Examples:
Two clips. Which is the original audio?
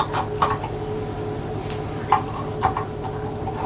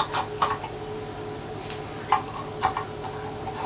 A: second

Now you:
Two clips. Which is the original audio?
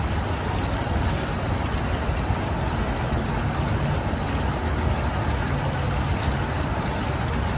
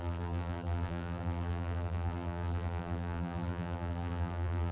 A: first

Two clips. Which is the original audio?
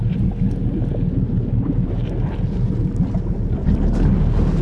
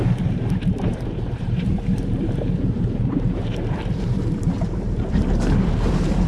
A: first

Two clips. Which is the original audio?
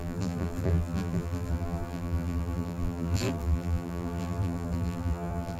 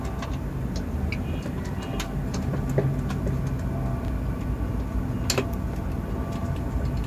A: second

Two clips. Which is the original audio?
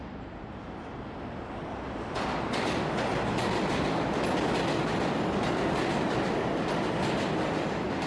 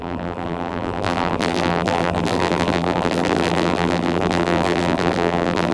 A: first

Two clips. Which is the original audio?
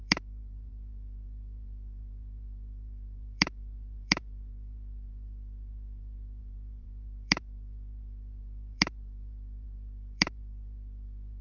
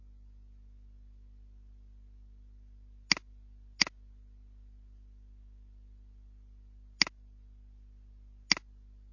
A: second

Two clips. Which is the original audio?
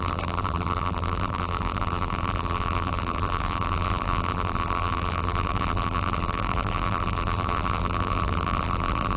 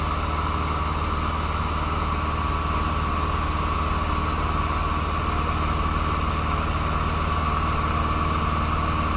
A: second